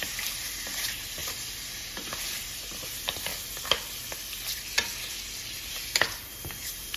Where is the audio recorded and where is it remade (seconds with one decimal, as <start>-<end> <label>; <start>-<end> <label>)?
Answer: 0.0-1.2 remade; 1.2-1.8 recorded; 1.8-3.3 remade; 3.3-5.7 recorded; 5.7-7.0 remade